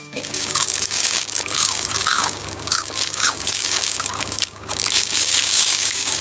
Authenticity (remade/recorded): remade